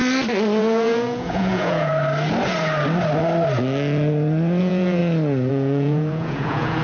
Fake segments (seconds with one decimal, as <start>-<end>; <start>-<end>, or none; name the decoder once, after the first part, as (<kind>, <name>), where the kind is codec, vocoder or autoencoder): 0.6-1.9 (vocoder, Vocos); 4.6-5.0; 5.5-6.8